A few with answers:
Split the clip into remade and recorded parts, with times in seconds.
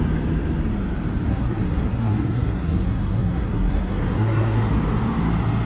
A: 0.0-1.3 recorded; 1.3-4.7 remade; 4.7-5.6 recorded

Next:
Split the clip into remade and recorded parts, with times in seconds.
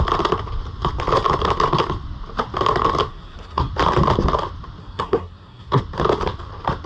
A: 0.0-3.1 recorded; 3.1-3.7 remade; 3.7-4.8 recorded; 4.8-5.8 remade; 5.8-6.9 recorded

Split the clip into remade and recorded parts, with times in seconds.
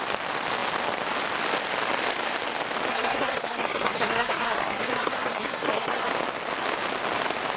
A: 0.0-2.9 recorded; 2.9-6.1 remade; 6.1-7.6 recorded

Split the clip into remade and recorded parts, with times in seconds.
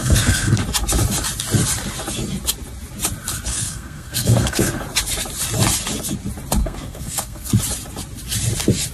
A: 0.0-0.6 remade; 0.6-3.5 recorded; 3.5-4.8 remade; 4.8-6.6 recorded; 6.6-7.5 remade; 7.5-8.9 recorded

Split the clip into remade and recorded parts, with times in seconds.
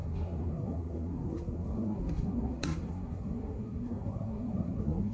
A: 0.0-5.1 remade